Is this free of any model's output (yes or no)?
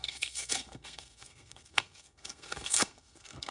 no